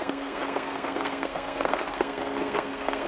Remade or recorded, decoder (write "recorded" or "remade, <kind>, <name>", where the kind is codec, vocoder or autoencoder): remade, codec, SNAC